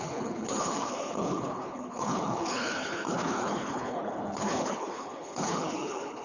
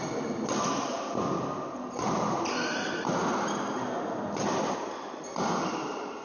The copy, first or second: first